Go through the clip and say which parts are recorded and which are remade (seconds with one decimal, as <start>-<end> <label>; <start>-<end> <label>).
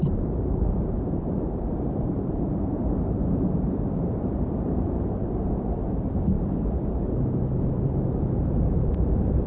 0.0-3.2 remade; 3.2-3.9 recorded; 3.9-9.5 remade